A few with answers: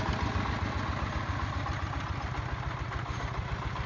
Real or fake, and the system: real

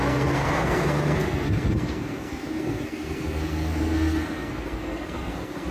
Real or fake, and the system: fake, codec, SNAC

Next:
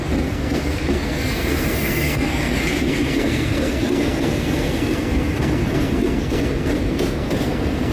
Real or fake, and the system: fake, codec, SNAC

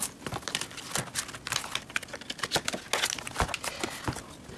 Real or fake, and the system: real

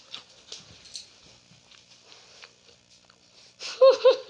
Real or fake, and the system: real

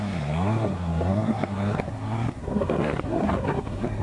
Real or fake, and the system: fake, codec, SNAC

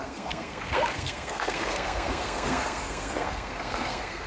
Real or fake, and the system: fake, codec, SNAC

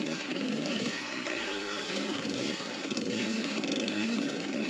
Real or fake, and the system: fake, codec, SNAC